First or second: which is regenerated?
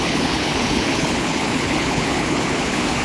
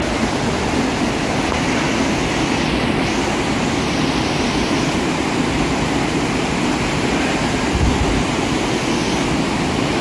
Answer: first